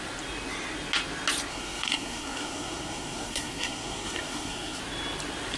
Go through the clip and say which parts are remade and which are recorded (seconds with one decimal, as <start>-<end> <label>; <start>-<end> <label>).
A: 0.0-1.5 recorded; 1.5-4.8 remade; 4.8-5.6 recorded